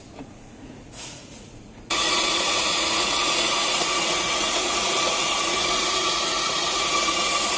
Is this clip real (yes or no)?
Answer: no